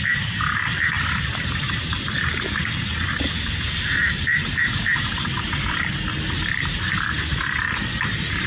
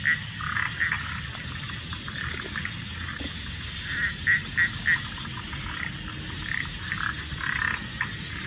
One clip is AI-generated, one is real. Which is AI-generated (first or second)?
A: first